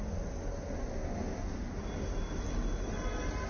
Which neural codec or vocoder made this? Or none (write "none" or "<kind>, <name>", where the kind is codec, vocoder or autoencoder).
none